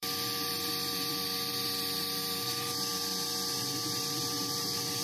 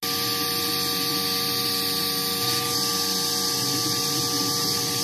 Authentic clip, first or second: second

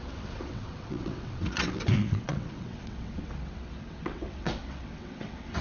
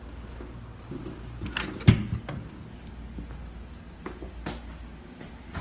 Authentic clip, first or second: second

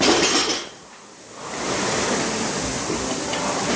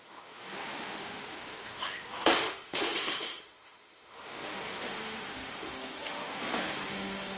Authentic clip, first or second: first